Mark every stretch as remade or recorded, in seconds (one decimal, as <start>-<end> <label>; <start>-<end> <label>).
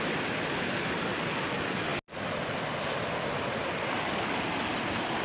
0.0-5.2 recorded